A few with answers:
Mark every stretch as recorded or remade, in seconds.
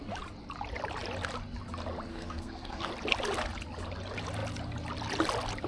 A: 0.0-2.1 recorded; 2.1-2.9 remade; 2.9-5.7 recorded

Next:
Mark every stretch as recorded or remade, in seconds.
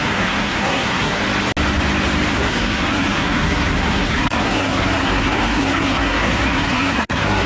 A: 0.0-1.2 remade; 1.2-2.3 recorded; 2.3-7.5 remade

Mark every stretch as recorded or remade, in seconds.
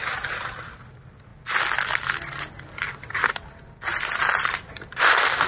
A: 0.0-5.5 recorded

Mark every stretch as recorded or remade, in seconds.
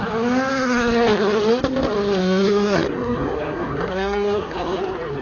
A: 0.0-2.2 recorded; 2.2-4.8 remade; 4.8-5.2 recorded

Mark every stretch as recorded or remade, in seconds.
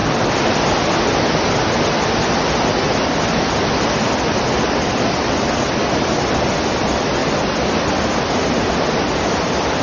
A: 0.0-9.8 recorded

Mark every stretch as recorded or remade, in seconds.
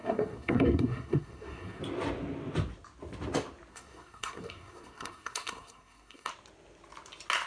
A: 0.0-1.8 remade; 1.8-3.7 recorded; 3.7-6.3 remade; 6.3-7.5 recorded